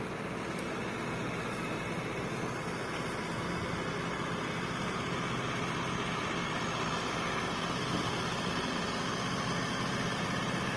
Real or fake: real